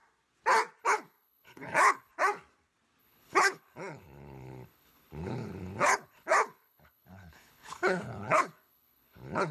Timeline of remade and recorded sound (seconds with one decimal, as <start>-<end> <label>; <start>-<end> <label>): 0.0-0.8 recorded; 0.8-2.1 remade; 2.1-3.0 recorded; 3.0-9.5 remade